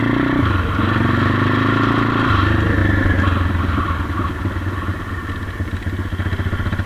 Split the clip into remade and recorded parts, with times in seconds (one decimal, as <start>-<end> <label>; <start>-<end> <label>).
0.0-6.9 recorded